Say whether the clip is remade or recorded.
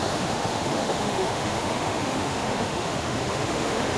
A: remade